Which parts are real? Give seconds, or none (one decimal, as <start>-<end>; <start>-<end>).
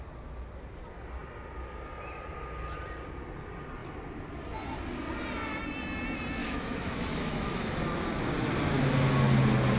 0.0-6.4; 7.8-9.8